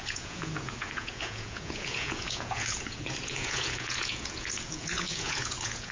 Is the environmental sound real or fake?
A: fake